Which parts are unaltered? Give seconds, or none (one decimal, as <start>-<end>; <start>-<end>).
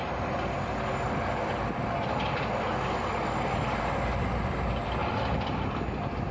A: 0.0-6.3